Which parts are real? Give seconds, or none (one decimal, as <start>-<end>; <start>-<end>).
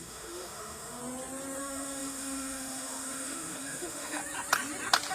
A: 1.0-1.6; 4.2-5.1